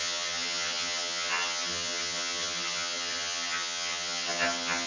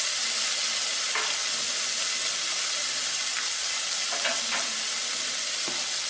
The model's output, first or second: first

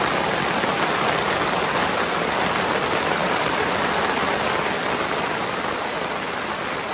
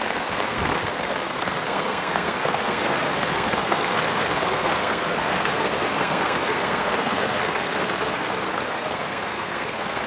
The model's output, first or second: second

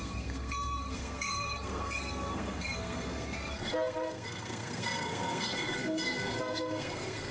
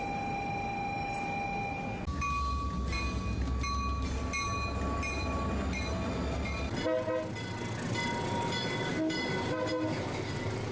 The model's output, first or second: first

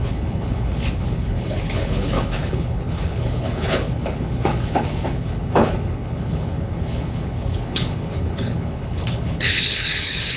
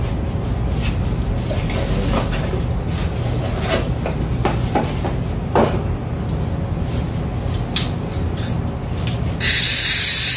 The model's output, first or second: first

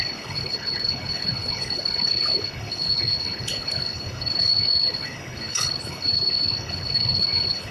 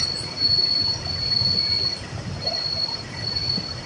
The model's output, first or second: first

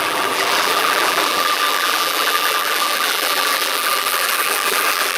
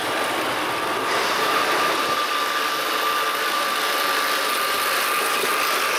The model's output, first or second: first